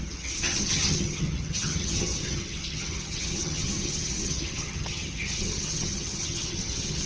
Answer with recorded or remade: remade